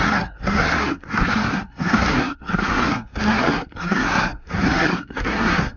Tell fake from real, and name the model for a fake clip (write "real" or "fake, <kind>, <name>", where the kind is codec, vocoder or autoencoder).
fake, codec, SNAC